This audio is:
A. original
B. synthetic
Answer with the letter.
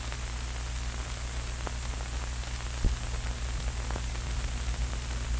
A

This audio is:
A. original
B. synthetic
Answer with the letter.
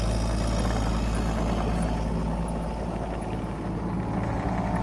A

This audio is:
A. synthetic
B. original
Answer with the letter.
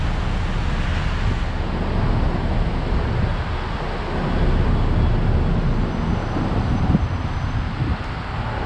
B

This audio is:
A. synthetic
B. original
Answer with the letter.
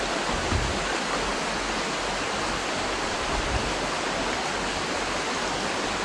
B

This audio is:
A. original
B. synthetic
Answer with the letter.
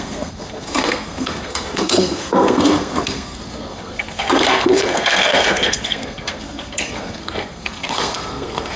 B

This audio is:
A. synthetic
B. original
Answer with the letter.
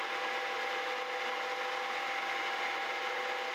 B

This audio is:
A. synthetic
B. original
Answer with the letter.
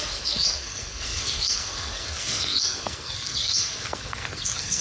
A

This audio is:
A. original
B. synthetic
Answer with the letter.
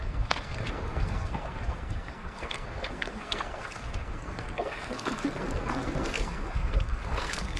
B